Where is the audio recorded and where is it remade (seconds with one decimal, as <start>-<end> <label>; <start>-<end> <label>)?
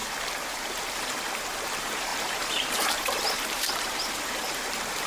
0.0-5.1 remade